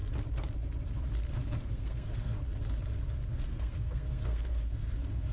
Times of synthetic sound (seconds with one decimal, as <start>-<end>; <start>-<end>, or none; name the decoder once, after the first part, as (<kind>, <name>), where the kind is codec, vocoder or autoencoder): 1.3-2.4 (codec, SNAC); 3.3-5.3